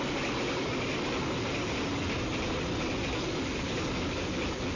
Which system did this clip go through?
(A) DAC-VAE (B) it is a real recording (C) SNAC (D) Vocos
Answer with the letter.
B